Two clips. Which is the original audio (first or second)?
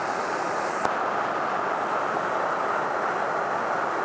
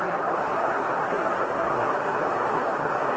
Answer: first